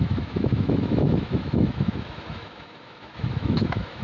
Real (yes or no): no